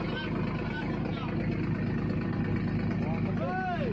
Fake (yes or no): no